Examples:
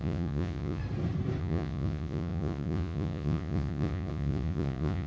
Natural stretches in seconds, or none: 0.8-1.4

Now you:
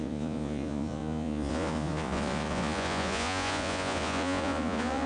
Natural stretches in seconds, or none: none

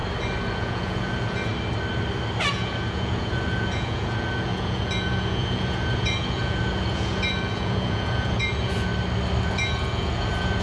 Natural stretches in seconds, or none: 0.0-0.5; 1.5-2.5; 8.9-9.4

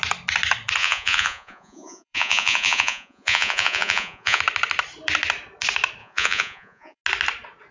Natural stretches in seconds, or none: 0.0-0.8; 4.4-6.0; 7.0-7.7

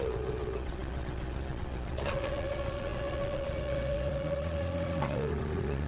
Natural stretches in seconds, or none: none

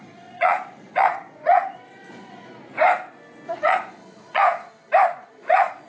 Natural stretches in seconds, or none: 2.5-3.6; 4.4-5.3